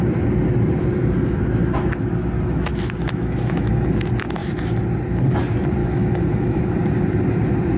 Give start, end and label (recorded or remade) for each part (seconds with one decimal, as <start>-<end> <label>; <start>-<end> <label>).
0.0-2.7 recorded; 2.7-3.9 remade; 3.9-5.8 recorded; 5.8-6.6 remade; 6.6-7.8 recorded

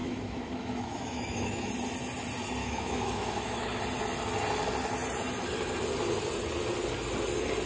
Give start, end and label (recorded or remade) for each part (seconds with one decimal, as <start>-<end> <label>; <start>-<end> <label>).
0.0-1.7 remade; 1.7-2.6 recorded; 2.6-3.8 remade; 3.8-7.7 recorded

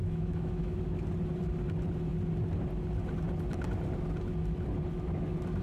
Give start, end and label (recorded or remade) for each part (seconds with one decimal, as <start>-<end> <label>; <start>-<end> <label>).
0.0-0.8 remade; 0.8-5.6 recorded

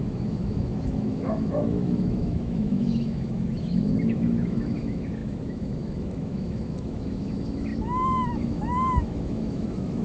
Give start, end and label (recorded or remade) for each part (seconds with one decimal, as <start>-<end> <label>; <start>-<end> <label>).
0.0-10.0 remade

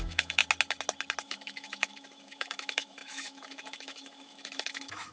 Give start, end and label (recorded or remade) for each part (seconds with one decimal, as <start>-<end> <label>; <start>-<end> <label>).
0.0-0.4 remade; 0.4-1.2 recorded; 1.2-5.1 remade

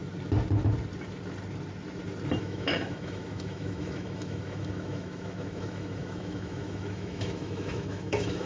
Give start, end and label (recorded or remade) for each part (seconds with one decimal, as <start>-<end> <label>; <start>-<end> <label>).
0.0-2.4 recorded; 2.4-8.5 remade